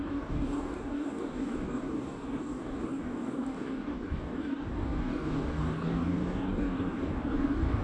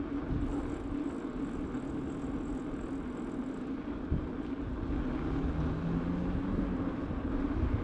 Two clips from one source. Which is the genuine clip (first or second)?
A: second